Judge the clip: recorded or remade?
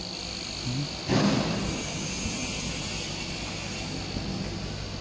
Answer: recorded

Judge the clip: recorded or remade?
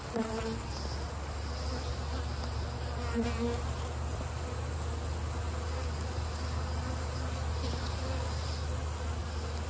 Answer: recorded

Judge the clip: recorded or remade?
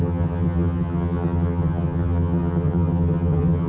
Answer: remade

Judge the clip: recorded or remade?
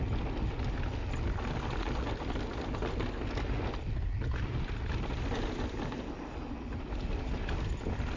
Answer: recorded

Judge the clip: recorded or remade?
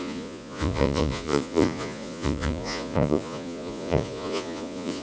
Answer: remade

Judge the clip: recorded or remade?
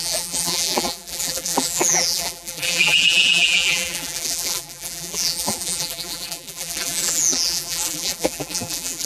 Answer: remade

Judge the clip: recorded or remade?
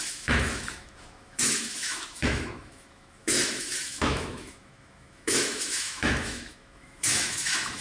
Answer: remade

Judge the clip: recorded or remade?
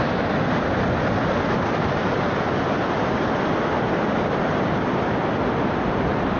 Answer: recorded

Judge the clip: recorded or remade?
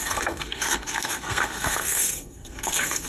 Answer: remade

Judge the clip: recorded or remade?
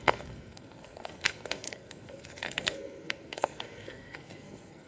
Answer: remade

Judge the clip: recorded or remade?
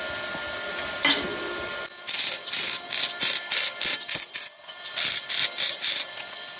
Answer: recorded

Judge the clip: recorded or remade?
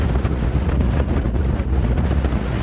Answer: remade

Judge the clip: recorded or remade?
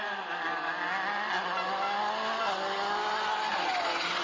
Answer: recorded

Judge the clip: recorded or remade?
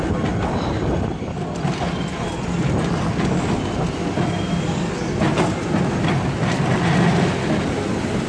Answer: recorded